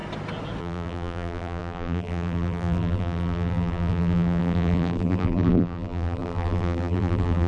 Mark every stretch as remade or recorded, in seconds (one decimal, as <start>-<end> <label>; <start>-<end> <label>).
0.0-0.6 recorded; 0.6-7.5 remade